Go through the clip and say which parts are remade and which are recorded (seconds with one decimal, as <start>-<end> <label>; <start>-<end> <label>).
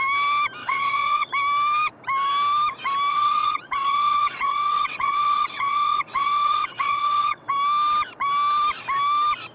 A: 0.0-0.6 recorded; 0.6-1.3 remade; 1.3-3.1 recorded; 3.1-7.5 remade; 7.5-9.5 recorded